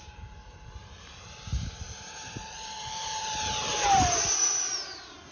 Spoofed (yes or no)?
yes